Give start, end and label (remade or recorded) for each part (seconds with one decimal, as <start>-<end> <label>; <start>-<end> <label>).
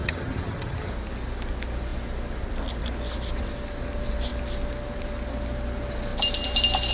0.0-0.9 remade; 0.9-6.9 recorded